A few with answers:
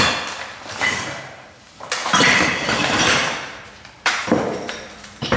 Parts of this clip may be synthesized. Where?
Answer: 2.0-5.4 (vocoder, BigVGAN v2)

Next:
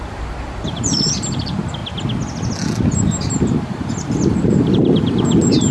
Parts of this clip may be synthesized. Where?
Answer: 0.0-1.8 (vocoder, BigVGAN v2); 3.4-5.7

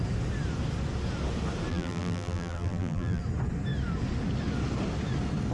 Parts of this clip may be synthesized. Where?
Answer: 1.7-3.2 (vocoder, BigVGAN v2)

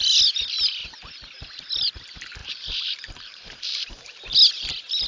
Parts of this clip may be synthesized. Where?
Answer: 2.4-4.2 (vocoder, BigVGAN v2)

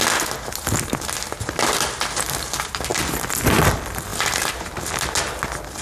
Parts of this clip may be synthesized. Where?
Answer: none